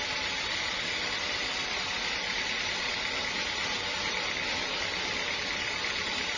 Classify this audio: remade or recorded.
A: recorded